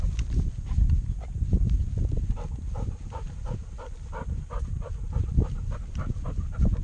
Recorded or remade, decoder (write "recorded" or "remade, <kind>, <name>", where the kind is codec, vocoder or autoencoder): recorded